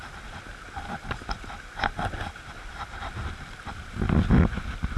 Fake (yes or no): no